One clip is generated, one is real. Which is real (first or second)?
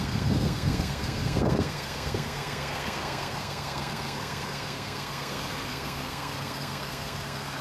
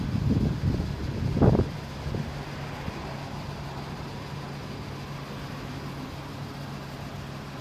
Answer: second